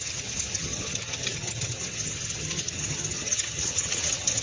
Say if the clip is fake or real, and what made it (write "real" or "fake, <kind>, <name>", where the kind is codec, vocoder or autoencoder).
fake, vocoder, HiFi-GAN